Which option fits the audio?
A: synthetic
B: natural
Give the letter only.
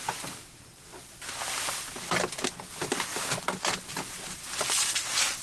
B